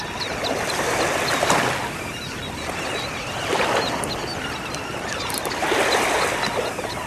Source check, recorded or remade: recorded